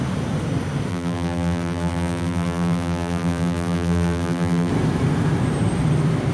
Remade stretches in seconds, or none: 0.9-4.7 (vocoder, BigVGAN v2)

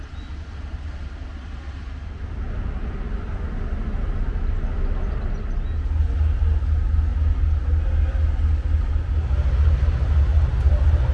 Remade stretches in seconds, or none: none